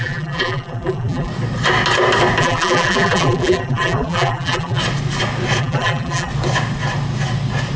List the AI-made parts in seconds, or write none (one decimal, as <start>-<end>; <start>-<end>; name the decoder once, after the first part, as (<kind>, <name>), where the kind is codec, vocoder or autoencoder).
0.0-1.3 (vocoder, BigVGAN v2); 2.4-4.8; 5.6-6.3